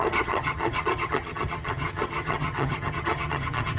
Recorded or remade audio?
remade